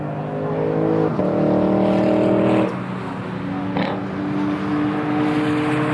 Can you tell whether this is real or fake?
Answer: real